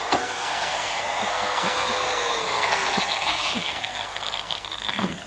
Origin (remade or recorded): remade